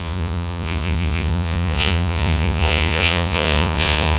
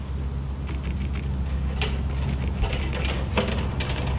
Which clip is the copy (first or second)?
first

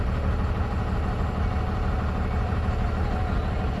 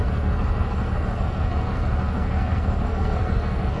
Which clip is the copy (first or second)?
second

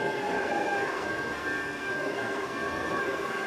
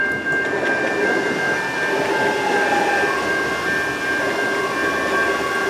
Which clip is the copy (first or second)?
first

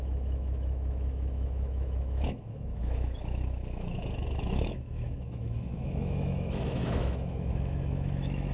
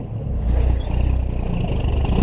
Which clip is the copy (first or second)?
first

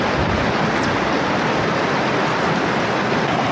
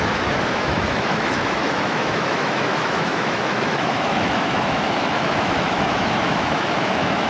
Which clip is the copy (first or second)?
second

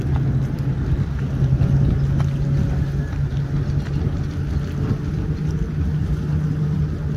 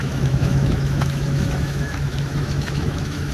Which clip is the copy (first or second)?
second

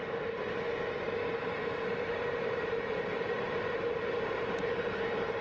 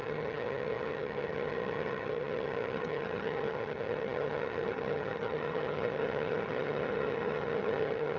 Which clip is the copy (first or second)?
second